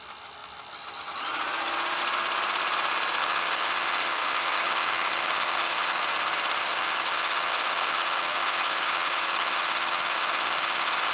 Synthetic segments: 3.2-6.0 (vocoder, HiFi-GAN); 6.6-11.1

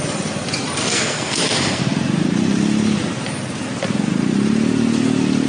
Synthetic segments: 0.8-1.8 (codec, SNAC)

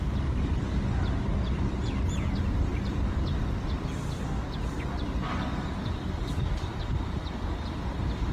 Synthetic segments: none